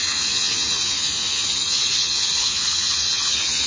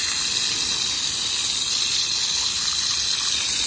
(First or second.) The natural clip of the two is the second